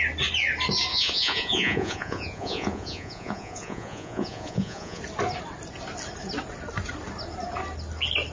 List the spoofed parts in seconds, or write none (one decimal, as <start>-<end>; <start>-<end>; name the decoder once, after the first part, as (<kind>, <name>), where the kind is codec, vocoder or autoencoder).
0.9-5.0 (vocoder, Vocos)